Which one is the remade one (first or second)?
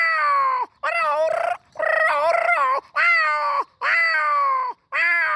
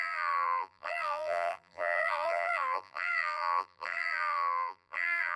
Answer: second